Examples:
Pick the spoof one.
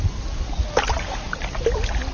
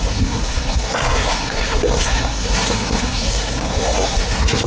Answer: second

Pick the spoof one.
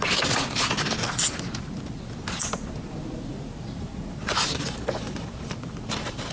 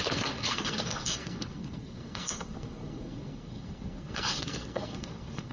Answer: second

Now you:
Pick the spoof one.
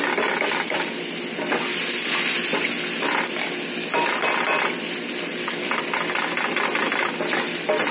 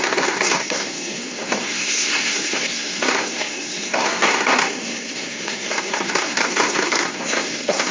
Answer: second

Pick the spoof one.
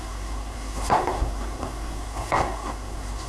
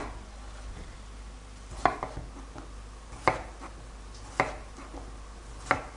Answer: first